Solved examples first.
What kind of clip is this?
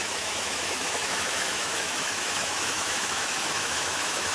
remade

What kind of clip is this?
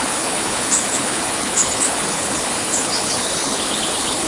remade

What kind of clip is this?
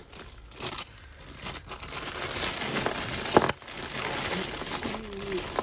recorded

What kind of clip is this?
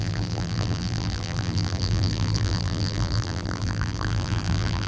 remade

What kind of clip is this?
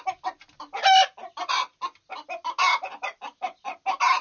recorded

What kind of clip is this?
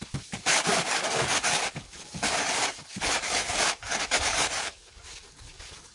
remade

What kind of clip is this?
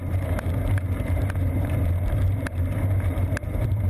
remade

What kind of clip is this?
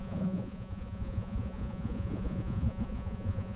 remade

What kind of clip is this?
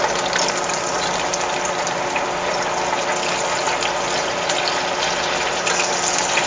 recorded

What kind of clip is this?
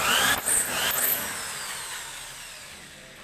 recorded